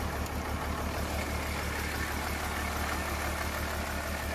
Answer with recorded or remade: recorded